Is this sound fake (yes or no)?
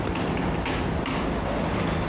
no